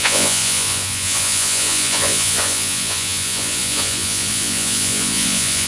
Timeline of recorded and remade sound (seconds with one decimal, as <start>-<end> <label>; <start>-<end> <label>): 0.0-5.7 remade